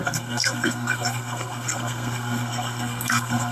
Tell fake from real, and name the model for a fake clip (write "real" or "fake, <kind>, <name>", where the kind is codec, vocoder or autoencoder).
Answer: fake, codec, SNAC